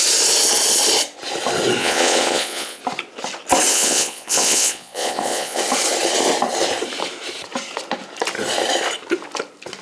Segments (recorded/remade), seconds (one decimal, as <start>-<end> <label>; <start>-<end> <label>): 0.0-1.8 recorded; 1.8-2.8 remade; 2.8-3.7 recorded; 3.7-5.6 remade; 5.6-9.8 recorded